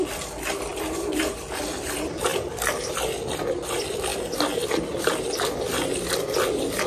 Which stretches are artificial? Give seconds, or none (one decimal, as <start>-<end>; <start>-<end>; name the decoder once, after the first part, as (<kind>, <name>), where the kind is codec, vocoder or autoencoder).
0.7-1.9 (vocoder, BigVGAN v2); 2.3-2.9

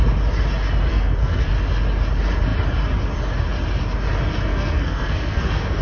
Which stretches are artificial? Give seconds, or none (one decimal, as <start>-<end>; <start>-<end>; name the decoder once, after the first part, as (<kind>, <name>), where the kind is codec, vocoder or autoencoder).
0.9-1.5 (codec, SNAC); 4.5-5.8

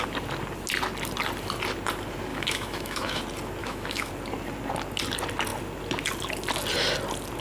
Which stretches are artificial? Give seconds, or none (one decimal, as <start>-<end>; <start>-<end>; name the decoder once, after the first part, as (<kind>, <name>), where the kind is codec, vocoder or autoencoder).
2.3-3.2 (autoencoder, DAC-VAE); 3.6-4.1